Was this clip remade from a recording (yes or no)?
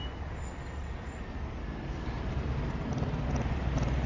no